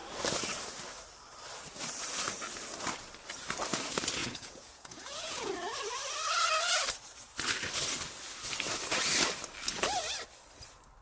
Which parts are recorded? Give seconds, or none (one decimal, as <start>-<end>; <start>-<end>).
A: 0.0-4.2; 5.5-11.0